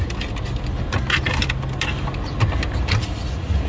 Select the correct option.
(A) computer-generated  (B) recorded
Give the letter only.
B